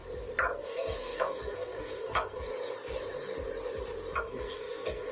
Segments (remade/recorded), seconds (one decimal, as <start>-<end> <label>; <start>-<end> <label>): 0.0-0.6 recorded; 0.6-2.5 remade; 2.5-4.2 recorded; 4.2-5.1 remade

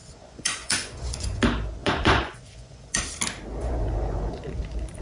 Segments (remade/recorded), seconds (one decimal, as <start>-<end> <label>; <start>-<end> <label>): 0.0-1.4 remade; 1.4-1.8 recorded; 1.8-3.0 remade; 3.0-3.6 recorded; 3.6-4.6 remade; 4.6-5.0 recorded

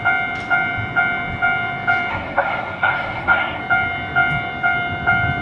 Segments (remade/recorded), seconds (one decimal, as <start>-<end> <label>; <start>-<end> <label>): 0.0-2.1 recorded; 2.1-3.6 remade; 3.6-5.4 recorded